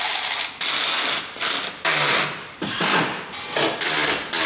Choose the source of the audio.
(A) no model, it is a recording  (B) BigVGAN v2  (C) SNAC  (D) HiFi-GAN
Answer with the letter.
A